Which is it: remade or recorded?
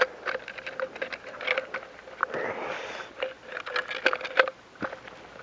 recorded